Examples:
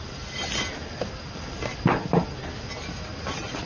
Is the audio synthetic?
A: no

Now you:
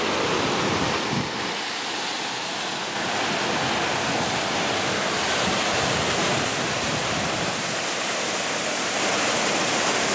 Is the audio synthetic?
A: no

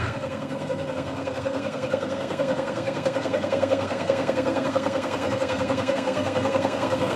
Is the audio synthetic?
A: yes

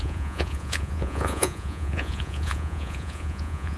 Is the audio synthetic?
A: yes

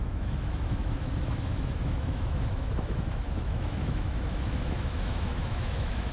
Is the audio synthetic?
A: yes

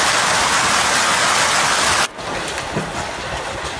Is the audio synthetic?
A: no